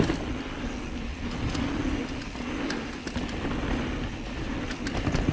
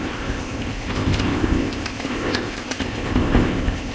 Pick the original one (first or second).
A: first